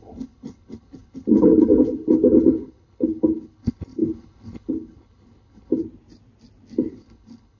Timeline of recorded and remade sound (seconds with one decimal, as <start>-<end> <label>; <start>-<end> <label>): 0.0-5.8 remade; 5.8-6.9 recorded; 6.9-7.6 remade